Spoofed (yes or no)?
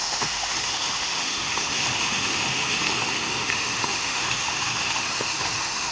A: yes